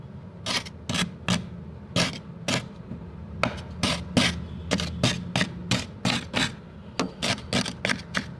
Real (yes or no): yes